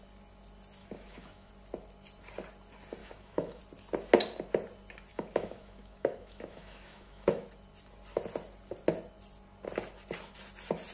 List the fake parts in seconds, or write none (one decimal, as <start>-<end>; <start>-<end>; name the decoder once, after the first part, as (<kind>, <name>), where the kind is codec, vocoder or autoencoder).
0.8-1.5 (autoencoder, DAC-VAE); 3.0-3.6; 5.1-7.4